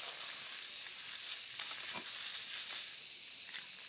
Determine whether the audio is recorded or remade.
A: recorded